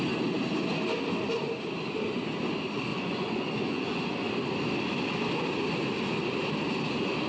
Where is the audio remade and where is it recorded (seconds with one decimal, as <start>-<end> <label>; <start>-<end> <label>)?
0.0-2.9 recorded; 2.9-4.1 remade; 4.1-7.3 recorded